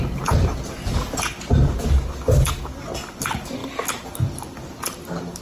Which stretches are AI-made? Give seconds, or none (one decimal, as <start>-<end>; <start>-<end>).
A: none